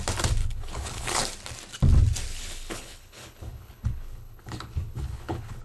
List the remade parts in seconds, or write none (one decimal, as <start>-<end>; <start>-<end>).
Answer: 0.4-1.2; 2.3-5.6